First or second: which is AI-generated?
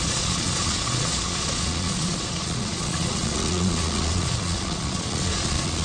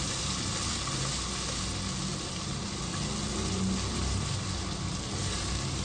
first